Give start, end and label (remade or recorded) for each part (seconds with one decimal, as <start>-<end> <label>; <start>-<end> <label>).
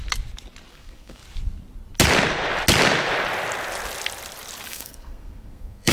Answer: 0.0-0.7 recorded; 0.7-1.2 remade; 1.2-4.7 recorded; 4.7-5.9 remade